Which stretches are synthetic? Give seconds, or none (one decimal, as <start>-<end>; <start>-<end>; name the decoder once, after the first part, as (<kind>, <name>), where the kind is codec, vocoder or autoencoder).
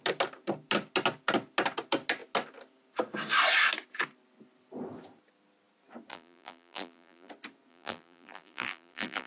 6.1-7.3 (vocoder, BigVGAN v2); 7.7-9.3